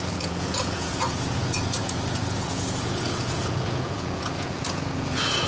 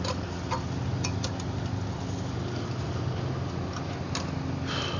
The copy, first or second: first